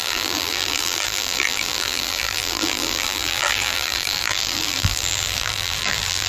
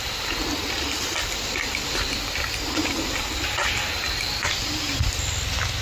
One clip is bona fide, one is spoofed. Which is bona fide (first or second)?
second